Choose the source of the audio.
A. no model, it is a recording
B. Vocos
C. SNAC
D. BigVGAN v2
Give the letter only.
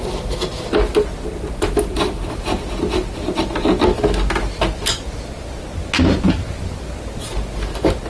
A